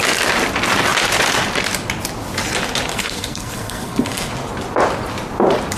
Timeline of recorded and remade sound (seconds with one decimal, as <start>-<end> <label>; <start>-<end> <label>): 0.0-2.9 recorded; 2.9-4.3 remade; 4.3-5.8 recorded